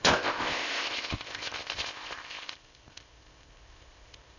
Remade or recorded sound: remade